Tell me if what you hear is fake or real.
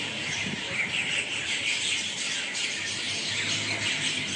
real